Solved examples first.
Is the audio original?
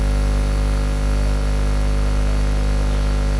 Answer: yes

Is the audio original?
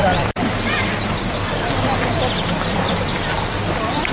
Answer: no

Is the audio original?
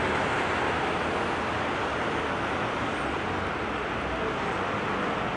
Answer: yes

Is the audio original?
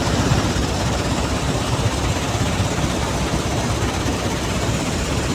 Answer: no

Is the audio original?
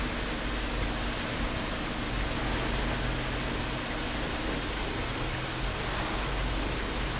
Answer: yes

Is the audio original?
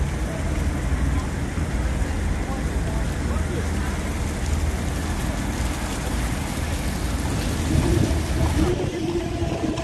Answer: yes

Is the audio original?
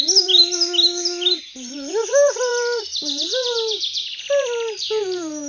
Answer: yes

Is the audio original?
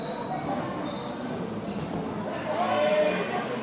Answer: yes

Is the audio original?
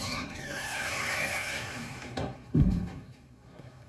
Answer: no